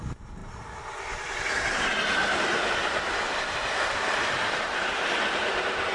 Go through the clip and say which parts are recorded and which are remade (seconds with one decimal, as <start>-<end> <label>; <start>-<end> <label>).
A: 0.0-0.4 remade; 0.4-3.9 recorded; 3.9-5.9 remade

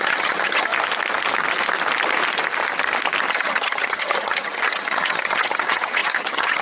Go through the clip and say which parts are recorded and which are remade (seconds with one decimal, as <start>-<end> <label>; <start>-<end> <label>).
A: 0.0-0.7 remade; 0.7-3.3 recorded; 3.3-6.6 remade

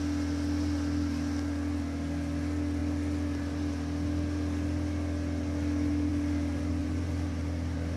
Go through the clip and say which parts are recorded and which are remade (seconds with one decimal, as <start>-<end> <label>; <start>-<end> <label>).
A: 0.0-6.8 recorded; 6.8-8.0 remade